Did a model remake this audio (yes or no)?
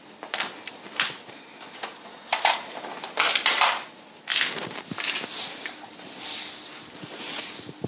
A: no